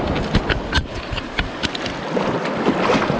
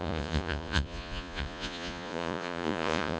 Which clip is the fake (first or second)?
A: second